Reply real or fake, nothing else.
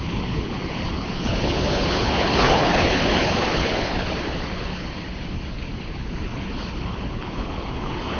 fake